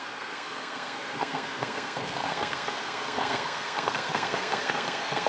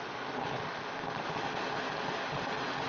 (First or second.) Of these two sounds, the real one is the second